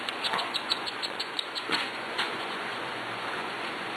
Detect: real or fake fake